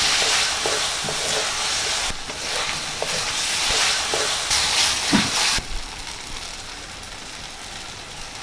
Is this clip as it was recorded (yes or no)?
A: yes